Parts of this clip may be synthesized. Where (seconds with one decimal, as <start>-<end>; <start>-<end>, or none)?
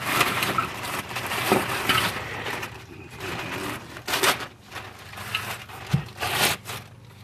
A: 0.6-3.4